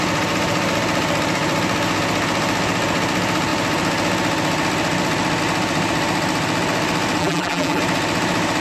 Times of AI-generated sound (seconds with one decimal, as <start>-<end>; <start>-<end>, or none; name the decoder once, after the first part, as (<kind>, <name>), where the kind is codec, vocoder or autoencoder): 7.2-7.8 (vocoder, BigVGAN v2)